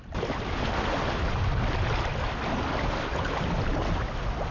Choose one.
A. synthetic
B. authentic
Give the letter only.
B